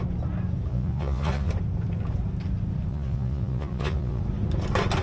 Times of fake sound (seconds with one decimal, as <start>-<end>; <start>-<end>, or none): 0.7-1.5; 2.9-4.2